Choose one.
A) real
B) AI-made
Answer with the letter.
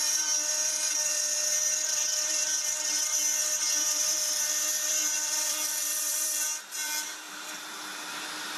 B